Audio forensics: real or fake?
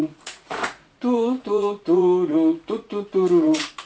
fake